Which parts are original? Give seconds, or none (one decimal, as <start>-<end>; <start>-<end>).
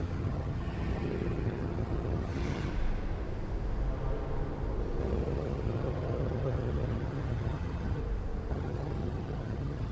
2.7-5.0; 8.0-8.5